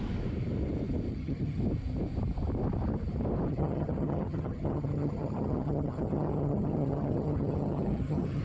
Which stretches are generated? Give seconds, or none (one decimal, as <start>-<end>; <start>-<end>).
1.1-1.6; 3.5-8.4